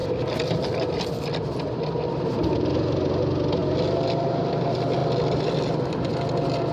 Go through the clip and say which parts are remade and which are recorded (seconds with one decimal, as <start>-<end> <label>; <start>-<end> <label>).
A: 0.0-6.7 recorded